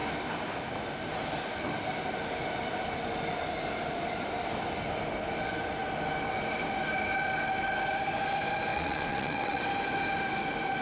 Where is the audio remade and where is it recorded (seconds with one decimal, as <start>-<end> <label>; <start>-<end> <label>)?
0.0-8.7 recorded; 8.7-9.6 remade; 9.6-10.8 recorded